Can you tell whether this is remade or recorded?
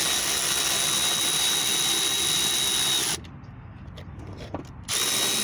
recorded